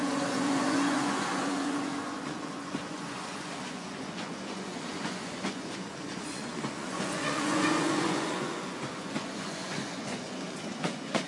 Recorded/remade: remade